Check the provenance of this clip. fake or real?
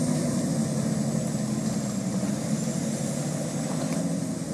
real